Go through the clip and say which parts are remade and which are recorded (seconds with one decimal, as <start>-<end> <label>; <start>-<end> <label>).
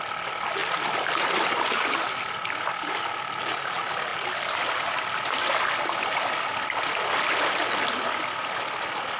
0.0-9.2 recorded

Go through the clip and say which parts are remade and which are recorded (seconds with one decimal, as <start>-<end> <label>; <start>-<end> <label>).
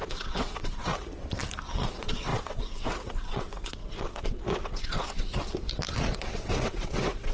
0.0-0.9 remade; 0.9-1.9 recorded; 1.9-5.3 remade; 5.3-6.1 recorded; 6.1-7.3 remade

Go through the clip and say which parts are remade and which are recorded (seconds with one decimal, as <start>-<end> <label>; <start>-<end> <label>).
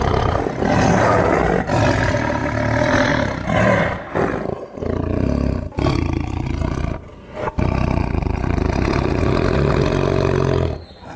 0.0-11.2 recorded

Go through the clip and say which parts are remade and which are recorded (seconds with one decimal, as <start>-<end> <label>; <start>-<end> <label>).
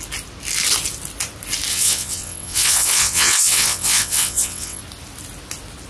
0.0-1.7 recorded; 1.7-4.8 remade; 4.8-5.9 recorded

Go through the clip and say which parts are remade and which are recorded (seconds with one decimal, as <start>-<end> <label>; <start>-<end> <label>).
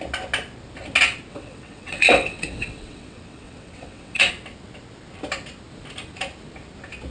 0.0-1.3 recorded; 1.3-4.3 remade; 4.3-7.1 recorded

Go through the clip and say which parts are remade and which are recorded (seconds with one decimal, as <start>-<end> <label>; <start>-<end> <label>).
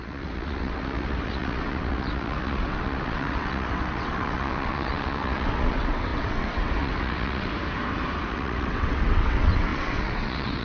0.0-7.5 remade; 7.5-8.3 recorded; 8.3-10.6 remade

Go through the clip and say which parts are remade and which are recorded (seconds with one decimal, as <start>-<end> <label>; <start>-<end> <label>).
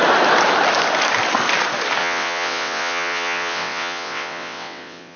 0.0-2.0 recorded; 2.0-5.2 remade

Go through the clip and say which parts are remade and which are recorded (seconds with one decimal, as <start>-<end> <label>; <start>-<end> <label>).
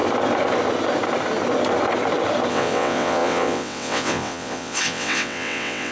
0.0-2.5 recorded; 2.5-5.9 remade